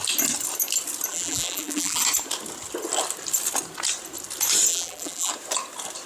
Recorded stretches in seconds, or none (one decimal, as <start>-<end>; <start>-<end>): 0.0-1.1; 2.0-4.7; 5.3-6.1